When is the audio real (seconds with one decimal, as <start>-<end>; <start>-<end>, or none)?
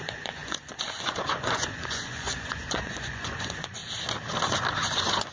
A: 3.8-4.8